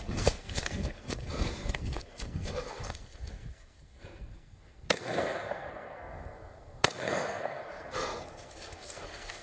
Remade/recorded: remade